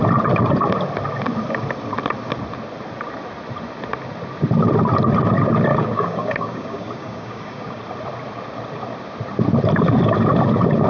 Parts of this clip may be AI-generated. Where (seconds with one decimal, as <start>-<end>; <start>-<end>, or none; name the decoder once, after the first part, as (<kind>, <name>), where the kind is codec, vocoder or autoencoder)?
5.7-7.8 (codec, DAC)